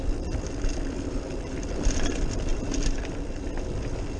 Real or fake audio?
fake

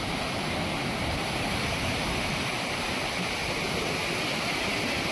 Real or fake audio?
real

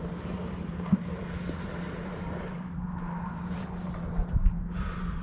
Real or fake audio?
fake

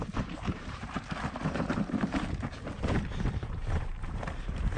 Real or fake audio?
fake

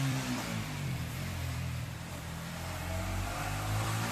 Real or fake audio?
fake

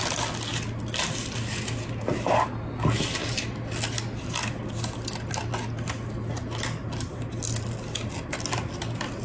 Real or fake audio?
real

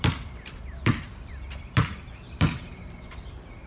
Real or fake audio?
fake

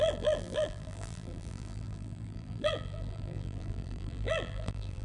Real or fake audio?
fake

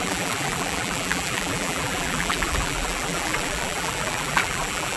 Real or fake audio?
fake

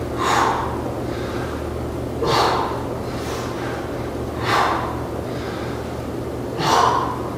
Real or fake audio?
real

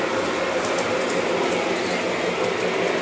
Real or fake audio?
real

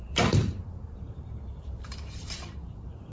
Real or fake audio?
fake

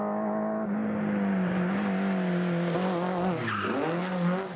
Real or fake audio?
real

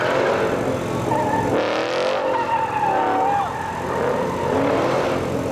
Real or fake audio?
real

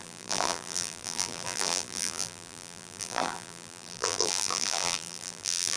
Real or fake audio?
fake